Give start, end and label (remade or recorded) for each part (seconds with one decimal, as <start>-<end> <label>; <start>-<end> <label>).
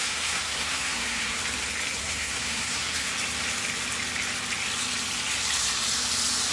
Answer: 0.0-1.4 remade; 1.4-2.0 recorded; 2.0-3.1 remade; 3.1-6.5 recorded